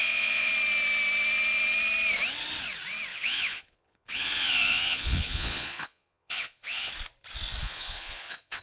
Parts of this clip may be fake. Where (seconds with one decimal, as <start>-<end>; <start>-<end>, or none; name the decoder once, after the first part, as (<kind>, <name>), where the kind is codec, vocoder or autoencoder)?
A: 0.0-0.5 (vocoder, Vocos); 3.1-6.9; 7.6-8.6